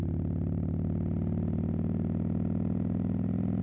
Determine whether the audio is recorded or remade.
recorded